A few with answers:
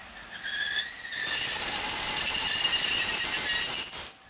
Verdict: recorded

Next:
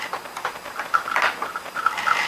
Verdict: recorded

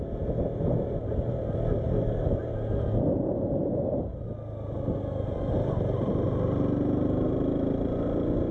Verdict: recorded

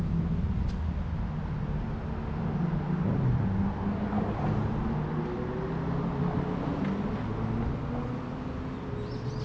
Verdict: recorded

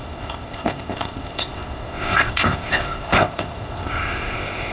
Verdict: remade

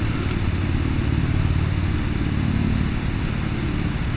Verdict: recorded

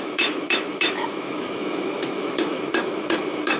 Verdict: remade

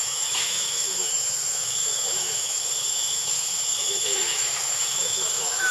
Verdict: remade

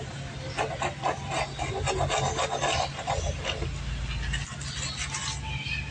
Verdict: recorded